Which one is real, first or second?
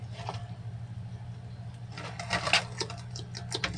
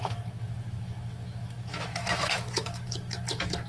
first